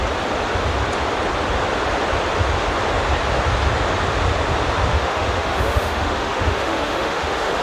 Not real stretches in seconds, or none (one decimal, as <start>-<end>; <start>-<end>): 4.9-7.6